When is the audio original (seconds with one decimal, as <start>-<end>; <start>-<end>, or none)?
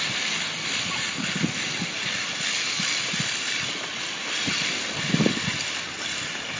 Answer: 0.0-6.6